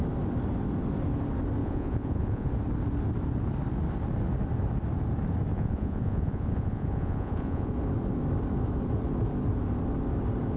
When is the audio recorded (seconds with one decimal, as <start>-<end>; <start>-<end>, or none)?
0.0-1.6; 2.5-5.5; 7.7-10.6